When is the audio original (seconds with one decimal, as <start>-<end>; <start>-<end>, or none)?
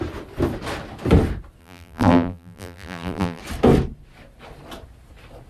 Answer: 0.0-1.6; 3.4-5.5